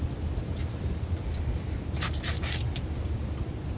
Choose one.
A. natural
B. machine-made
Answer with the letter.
A